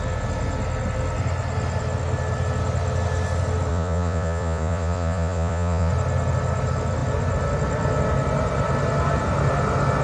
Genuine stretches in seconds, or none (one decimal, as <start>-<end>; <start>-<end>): 0.0-3.7; 5.9-10.0